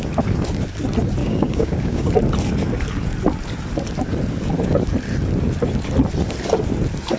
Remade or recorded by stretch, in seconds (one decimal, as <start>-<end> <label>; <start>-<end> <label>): 0.0-1.2 recorded; 1.2-2.1 remade; 2.1-7.2 recorded